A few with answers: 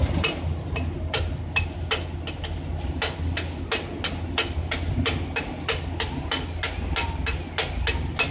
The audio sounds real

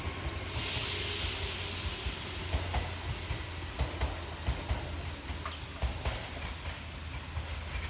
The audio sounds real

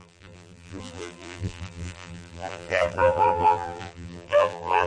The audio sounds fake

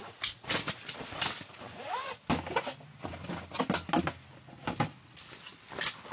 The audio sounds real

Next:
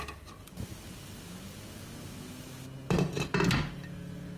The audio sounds real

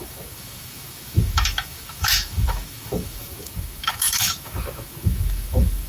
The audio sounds fake